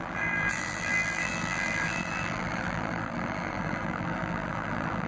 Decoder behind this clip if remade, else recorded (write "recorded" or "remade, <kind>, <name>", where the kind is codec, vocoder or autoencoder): remade, vocoder, BigVGAN v2